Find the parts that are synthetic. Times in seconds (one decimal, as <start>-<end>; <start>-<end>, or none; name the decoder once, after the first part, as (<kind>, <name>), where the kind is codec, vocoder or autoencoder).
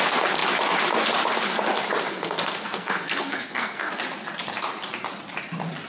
2.1-3.9 (codec, SNAC)